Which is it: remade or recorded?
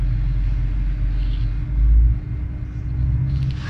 recorded